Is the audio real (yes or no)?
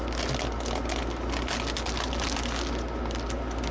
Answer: yes